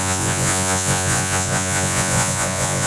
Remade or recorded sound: remade